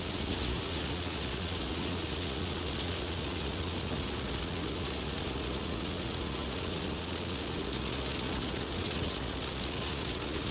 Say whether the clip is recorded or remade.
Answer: remade